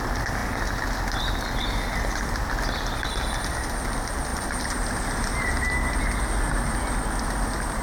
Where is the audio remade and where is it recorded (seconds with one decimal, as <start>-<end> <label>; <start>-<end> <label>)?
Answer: 0.0-7.8 recorded

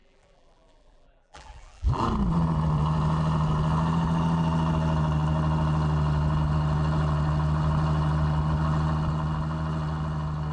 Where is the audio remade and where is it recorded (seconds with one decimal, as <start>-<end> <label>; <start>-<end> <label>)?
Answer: 0.0-2.0 remade; 2.0-10.5 recorded

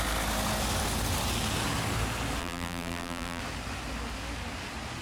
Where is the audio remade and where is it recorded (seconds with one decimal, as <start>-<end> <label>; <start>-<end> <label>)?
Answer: 0.0-2.4 recorded; 2.4-3.4 remade; 3.4-5.0 recorded

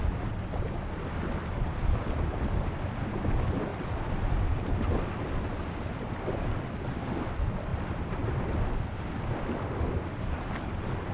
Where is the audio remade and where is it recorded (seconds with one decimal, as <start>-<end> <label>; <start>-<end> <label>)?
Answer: 0.0-3.7 recorded; 3.7-7.0 remade; 7.0-11.1 recorded

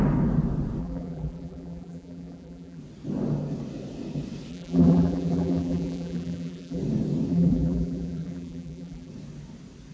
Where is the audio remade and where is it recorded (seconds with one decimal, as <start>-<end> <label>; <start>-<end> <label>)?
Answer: 0.0-0.8 recorded; 0.8-2.8 remade; 2.8-4.5 recorded; 4.5-6.8 remade; 6.8-7.3 recorded; 7.3-9.1 remade; 9.1-9.9 recorded